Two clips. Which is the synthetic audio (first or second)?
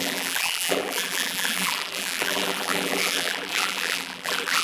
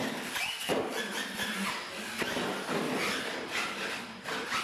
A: first